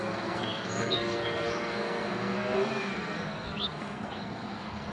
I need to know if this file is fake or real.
fake